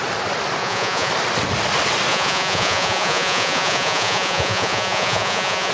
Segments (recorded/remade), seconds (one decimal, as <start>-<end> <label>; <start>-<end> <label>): 0.0-0.6 recorded; 0.6-1.1 remade; 1.1-2.1 recorded; 2.1-5.7 remade